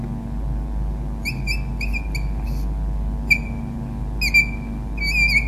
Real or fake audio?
real